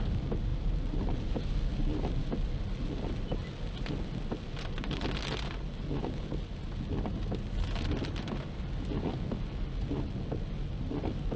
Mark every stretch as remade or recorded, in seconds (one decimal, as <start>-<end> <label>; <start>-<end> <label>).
0.0-0.5 recorded; 0.5-1.6 remade; 1.6-11.4 recorded